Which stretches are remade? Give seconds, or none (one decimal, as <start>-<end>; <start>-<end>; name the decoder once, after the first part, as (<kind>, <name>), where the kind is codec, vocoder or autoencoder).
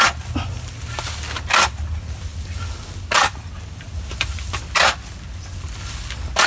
none